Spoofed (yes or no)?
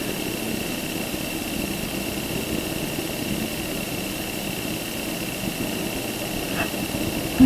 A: no